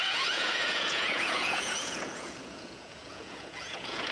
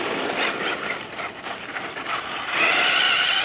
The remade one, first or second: first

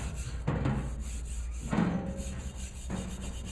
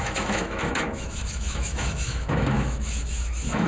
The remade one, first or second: second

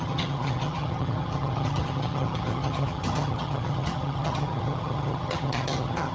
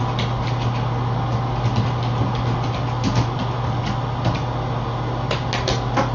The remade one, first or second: first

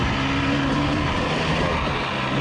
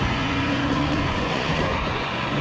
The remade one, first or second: second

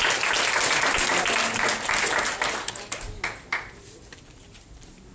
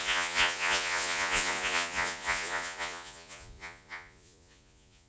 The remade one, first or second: second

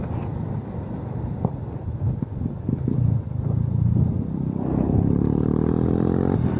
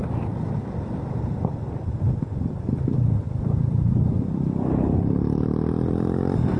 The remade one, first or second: second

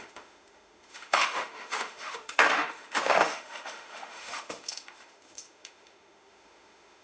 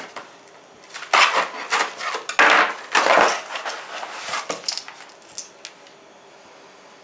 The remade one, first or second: first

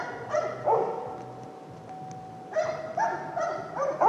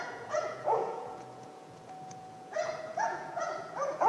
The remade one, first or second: second